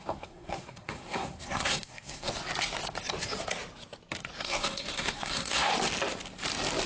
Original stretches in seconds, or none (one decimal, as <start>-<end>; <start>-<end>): 2.3-4.4; 5.7-6.9